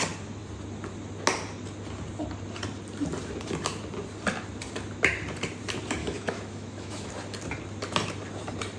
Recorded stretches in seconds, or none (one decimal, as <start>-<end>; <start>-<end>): 0.0-6.0; 7.1-8.8